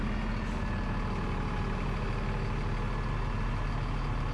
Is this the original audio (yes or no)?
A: yes